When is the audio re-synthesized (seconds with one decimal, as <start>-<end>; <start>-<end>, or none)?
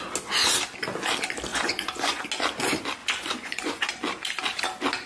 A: 1.5-2.2; 3.0-3.9